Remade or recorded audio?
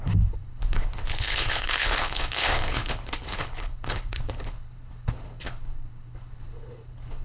remade